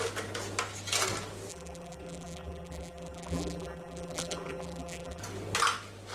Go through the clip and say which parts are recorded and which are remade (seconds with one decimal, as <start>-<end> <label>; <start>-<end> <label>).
0.0-1.5 recorded; 1.5-5.2 remade; 5.2-6.1 recorded